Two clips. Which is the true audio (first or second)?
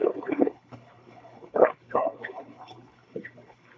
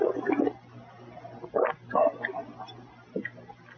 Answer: second